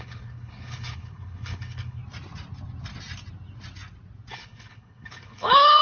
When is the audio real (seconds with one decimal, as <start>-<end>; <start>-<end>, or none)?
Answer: 2.0-4.3